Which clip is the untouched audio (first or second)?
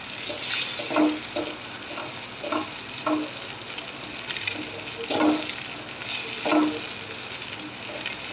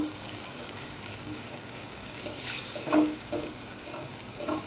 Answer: first